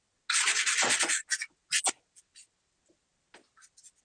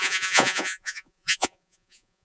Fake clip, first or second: second